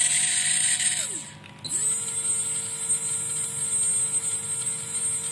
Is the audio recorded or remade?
recorded